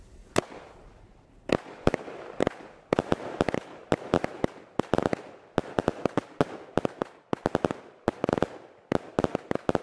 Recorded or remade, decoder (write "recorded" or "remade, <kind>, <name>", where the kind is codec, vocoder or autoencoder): recorded